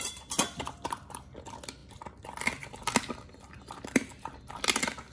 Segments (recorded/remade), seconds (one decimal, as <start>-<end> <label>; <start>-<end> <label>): 0.0-5.1 recorded